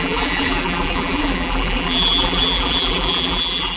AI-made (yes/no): yes